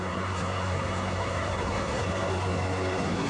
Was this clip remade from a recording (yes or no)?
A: yes